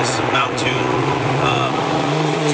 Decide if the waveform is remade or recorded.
remade